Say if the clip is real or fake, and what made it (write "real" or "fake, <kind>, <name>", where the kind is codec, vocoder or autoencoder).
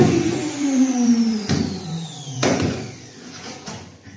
fake, vocoder, Vocos